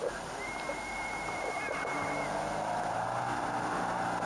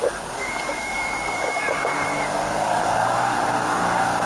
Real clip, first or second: first